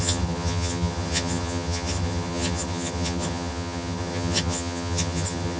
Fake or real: fake